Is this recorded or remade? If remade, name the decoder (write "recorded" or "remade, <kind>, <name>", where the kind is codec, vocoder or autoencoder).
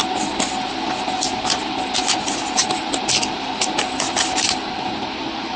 recorded